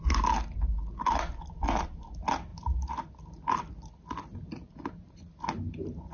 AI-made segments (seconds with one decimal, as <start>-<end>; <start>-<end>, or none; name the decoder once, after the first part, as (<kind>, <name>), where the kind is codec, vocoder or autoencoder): none